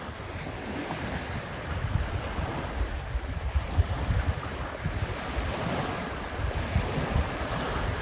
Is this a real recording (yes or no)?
no